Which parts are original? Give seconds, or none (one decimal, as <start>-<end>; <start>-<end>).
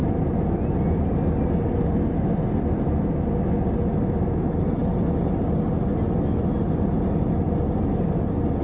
0.0-8.6